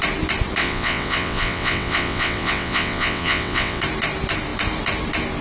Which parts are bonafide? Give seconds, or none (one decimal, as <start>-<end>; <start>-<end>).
0.0-0.6; 3.8-5.4